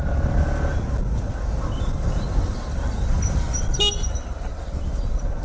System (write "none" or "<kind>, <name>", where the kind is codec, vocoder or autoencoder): none